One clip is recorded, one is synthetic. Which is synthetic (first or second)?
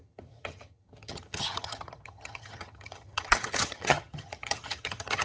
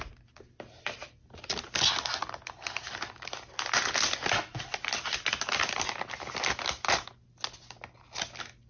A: first